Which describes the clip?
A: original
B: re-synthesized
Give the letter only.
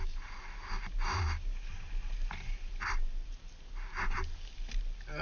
A